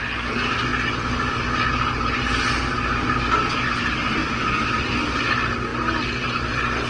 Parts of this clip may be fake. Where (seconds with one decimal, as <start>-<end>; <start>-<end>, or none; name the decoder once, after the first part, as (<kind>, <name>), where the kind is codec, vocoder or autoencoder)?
none